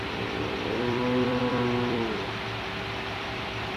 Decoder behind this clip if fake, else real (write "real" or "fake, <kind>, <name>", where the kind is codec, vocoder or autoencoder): fake, vocoder, BigVGAN v2